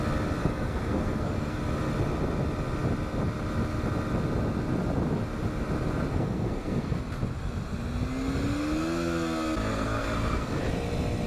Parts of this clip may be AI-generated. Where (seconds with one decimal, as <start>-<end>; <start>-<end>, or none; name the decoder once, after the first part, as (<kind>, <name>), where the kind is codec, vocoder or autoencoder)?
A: 0.4-1.6 (codec, SNAC); 6.1-7.0; 9.7-10.6